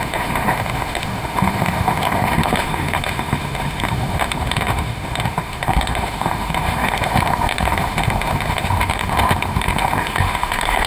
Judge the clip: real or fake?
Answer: fake